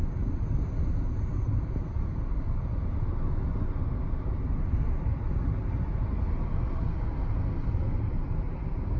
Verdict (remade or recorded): recorded